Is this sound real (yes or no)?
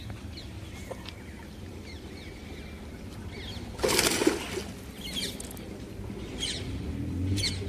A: yes